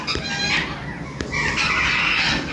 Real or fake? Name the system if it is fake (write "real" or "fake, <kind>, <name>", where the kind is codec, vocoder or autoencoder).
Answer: real